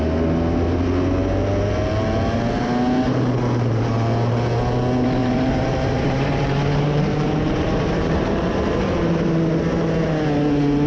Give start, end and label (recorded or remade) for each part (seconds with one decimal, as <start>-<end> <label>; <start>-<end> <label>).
0.0-5.2 recorded; 5.2-8.8 remade; 8.8-10.9 recorded